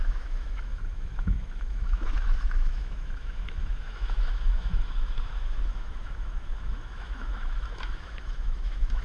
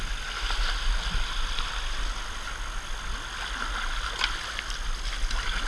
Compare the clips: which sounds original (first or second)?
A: second